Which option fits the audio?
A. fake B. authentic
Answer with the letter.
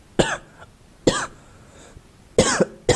B